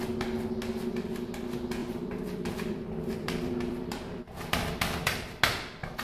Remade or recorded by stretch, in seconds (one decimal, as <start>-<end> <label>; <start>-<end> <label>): 0.0-1.8 recorded; 1.8-5.4 remade; 5.4-6.0 recorded